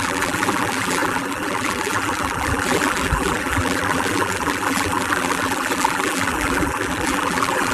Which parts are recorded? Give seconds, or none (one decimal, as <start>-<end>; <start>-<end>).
none